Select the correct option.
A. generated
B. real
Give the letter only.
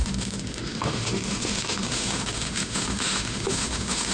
A